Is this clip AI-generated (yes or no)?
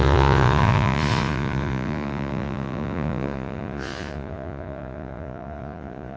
yes